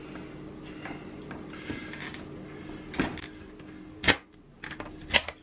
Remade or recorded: recorded